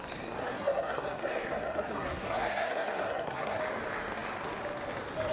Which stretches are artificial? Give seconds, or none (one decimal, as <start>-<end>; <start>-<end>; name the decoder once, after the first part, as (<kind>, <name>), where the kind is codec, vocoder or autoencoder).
0.4-3.6 (codec, SNAC)